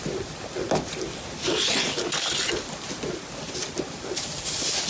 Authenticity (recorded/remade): recorded